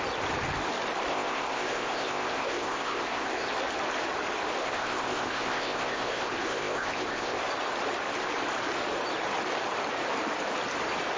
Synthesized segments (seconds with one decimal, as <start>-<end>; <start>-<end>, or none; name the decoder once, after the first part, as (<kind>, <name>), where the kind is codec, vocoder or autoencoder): 1.1-3.5 (codec, ZipCodec); 4.6-7.4